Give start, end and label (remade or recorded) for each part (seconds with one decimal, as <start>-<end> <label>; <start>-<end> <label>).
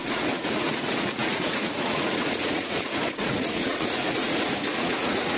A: 0.0-5.4 remade